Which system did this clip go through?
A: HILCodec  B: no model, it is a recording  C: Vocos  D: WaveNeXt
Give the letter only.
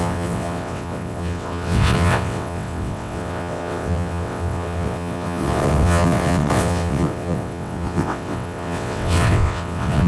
D